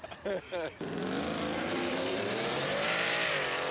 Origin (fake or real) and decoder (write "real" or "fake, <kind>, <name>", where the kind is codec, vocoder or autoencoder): fake, vocoder, BigVGAN v2